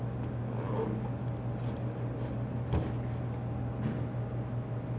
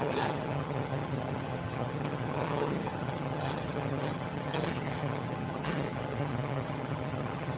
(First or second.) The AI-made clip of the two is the second